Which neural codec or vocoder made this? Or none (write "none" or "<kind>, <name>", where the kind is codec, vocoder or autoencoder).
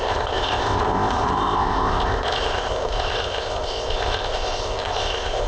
codec, ZipCodec